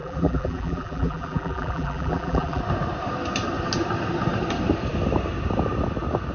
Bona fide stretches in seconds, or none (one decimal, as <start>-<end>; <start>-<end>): 2.6-6.3